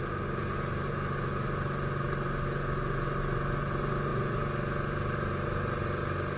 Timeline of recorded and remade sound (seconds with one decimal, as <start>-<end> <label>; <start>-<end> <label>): 0.0-6.4 recorded